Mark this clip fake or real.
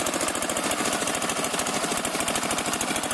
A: real